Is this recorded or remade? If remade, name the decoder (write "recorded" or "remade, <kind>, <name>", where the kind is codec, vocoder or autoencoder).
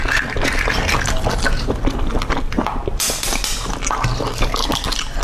recorded